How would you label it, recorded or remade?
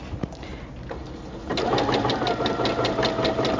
recorded